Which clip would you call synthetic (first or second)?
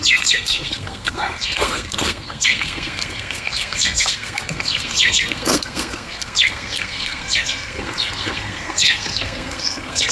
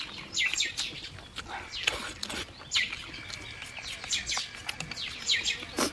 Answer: first